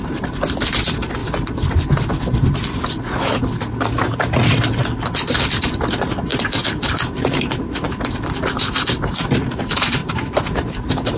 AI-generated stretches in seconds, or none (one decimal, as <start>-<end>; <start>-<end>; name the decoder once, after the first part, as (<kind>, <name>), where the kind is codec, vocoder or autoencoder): 0.0-1.2 (vocoder, BigVGAN v2); 5.1-11.2